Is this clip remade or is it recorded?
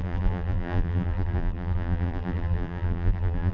remade